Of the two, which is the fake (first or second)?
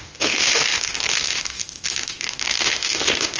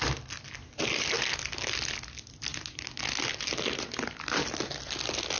first